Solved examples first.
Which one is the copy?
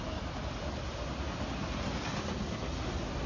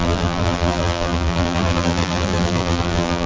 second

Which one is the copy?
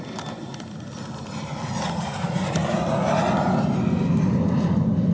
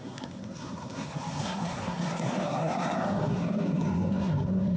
second